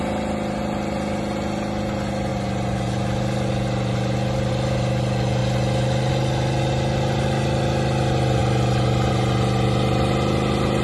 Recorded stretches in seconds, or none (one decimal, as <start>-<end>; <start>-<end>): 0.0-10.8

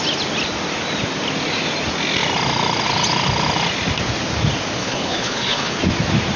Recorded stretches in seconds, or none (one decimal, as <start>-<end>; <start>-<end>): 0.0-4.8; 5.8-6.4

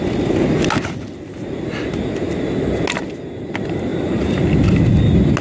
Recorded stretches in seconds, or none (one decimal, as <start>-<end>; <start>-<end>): 0.0-5.4

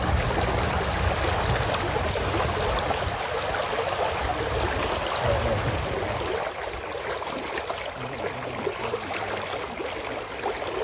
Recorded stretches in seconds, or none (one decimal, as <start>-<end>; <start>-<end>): 0.0-10.8